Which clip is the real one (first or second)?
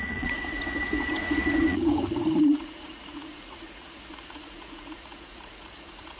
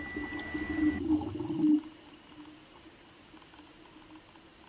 second